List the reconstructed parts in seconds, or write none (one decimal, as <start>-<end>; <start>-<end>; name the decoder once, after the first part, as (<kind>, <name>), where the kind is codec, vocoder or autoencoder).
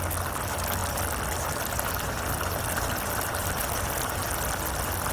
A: none